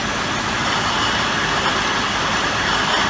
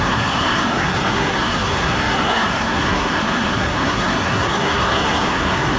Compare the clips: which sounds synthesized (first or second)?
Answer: second